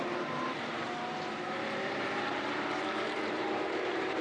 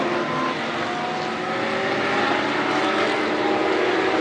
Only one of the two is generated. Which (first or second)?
first